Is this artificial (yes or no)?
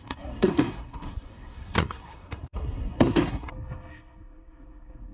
yes